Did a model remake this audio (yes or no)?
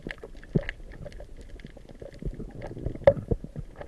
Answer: no